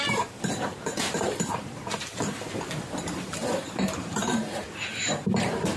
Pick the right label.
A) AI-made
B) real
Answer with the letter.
A